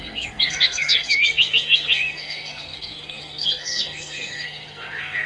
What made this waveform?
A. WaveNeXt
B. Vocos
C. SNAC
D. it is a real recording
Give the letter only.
C